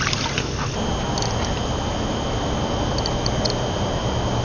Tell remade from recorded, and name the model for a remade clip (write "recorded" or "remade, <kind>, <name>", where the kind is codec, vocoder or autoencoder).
recorded